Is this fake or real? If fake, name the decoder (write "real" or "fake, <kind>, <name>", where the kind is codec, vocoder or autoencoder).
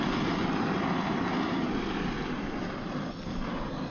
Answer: real